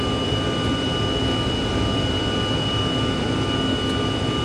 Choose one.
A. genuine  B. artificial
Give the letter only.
A